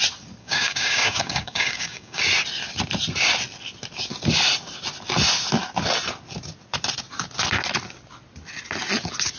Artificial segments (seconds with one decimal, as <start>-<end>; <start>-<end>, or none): 0.4-2.2